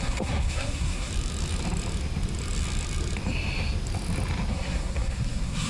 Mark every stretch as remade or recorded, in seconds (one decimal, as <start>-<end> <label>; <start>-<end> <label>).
0.0-1.1 remade; 1.1-4.5 recorded; 4.5-5.7 remade